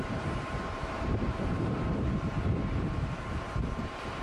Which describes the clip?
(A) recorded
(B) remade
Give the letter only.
B